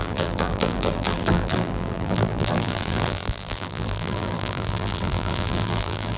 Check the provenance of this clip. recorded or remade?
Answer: remade